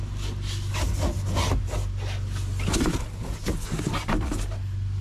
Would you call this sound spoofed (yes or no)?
no